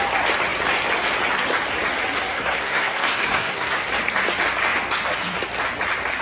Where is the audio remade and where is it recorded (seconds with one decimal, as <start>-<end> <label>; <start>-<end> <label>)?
0.0-2.3 recorded; 2.3-3.9 remade; 3.9-6.2 recorded